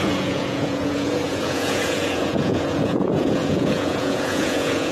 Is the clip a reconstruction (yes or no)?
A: yes